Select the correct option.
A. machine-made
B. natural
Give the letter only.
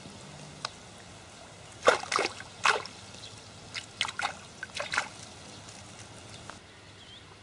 B